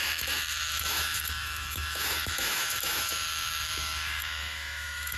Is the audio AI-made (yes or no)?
yes